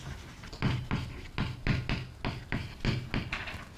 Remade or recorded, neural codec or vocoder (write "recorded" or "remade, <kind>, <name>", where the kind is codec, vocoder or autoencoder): recorded